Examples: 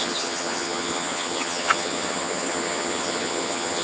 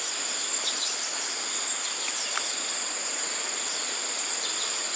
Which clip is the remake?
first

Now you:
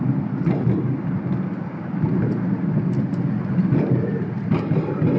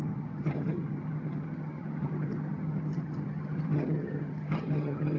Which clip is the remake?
second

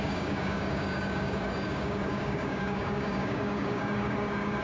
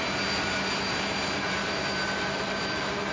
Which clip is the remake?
first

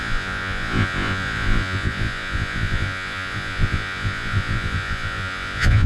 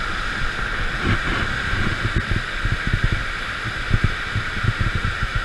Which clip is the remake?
first